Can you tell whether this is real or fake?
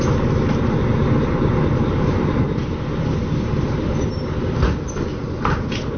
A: real